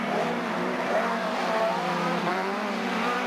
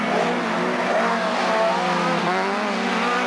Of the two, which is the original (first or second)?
second